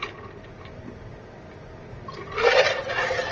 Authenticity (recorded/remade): recorded